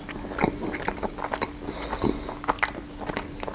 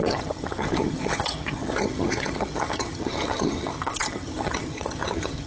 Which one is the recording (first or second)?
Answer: first